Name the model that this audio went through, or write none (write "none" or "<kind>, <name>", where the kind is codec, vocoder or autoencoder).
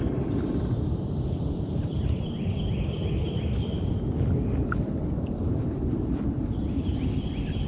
none